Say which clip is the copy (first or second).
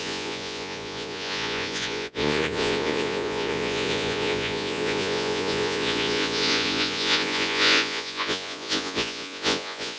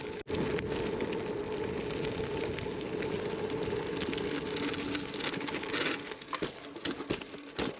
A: first